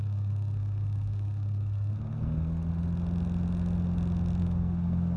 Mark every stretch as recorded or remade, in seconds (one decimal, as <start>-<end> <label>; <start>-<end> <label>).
0.0-2.7 remade; 2.7-4.4 recorded; 4.4-5.2 remade